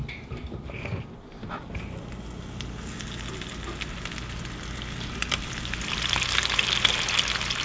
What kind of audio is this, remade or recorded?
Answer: recorded